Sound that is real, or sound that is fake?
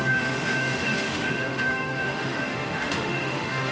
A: fake